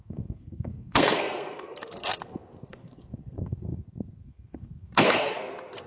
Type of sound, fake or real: fake